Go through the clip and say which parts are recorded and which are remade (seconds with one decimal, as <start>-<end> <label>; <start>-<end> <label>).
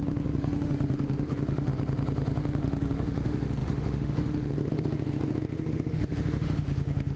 0.0-1.7 remade; 1.7-2.4 recorded; 2.4-7.2 remade